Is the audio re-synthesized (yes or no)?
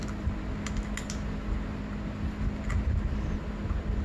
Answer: no